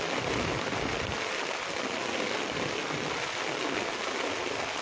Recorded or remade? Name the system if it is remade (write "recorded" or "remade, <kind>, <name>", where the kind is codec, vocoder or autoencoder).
recorded